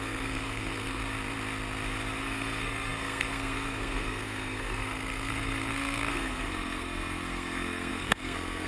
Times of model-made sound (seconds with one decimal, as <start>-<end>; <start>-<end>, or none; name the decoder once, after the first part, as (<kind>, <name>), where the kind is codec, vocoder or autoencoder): 0.0-1.0 (codec, SNAC); 2.2-8.7